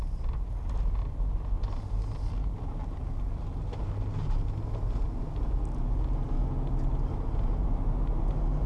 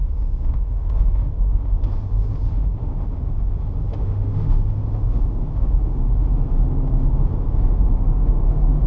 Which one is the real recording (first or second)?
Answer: first